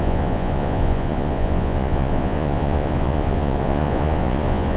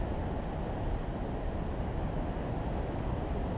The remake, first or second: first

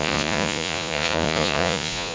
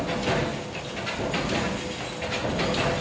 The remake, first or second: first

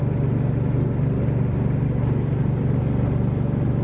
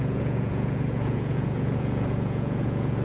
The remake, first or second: second